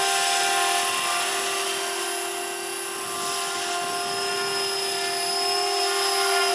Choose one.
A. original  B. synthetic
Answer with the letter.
A